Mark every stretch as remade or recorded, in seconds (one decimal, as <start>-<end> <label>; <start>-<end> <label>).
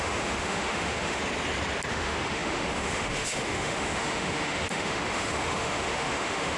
0.0-1.2 remade; 1.2-1.9 recorded; 1.9-6.6 remade